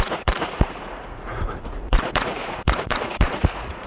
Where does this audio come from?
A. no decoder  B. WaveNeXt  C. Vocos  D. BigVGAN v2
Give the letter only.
C